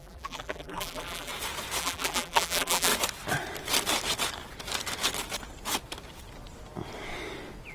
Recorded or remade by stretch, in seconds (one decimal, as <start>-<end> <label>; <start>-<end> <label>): 0.0-1.3 remade; 1.3-1.8 recorded; 1.8-2.9 remade; 2.9-7.7 recorded